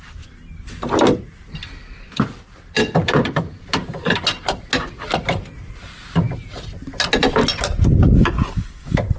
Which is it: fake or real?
real